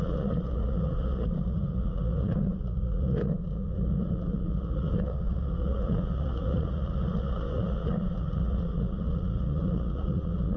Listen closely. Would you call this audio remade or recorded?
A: remade